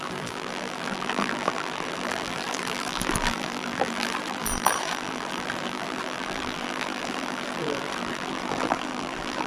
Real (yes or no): no